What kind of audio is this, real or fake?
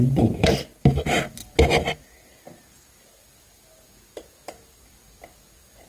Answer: real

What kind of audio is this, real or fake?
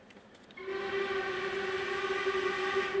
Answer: real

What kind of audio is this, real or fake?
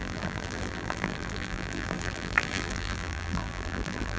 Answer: fake